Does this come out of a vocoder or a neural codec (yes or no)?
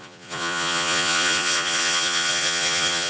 yes